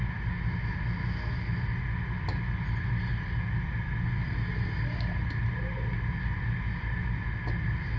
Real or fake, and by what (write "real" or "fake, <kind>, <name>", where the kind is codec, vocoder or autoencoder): real